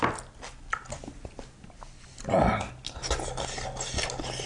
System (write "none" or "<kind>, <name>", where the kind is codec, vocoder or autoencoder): none